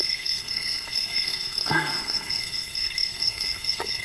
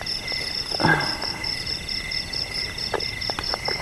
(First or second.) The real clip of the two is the second